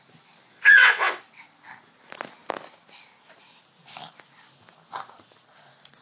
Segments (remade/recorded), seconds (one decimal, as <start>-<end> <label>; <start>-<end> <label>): 0.0-0.5 recorded; 0.5-1.2 remade; 1.2-6.0 recorded